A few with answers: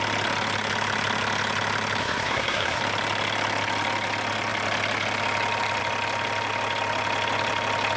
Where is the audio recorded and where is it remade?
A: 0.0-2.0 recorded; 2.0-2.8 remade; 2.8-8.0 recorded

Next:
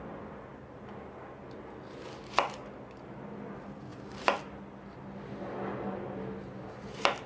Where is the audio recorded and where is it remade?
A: 0.0-7.3 recorded

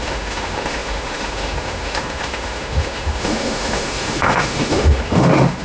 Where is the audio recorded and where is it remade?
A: 0.0-5.6 remade

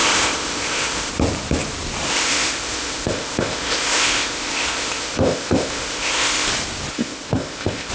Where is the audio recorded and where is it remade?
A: 0.0-1.1 remade; 1.1-2.1 recorded; 2.1-6.5 remade; 6.5-6.9 recorded; 6.9-7.9 remade